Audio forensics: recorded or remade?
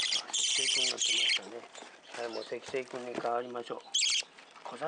recorded